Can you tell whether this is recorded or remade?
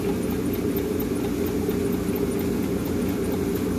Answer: recorded